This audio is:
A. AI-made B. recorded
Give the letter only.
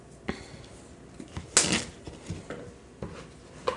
B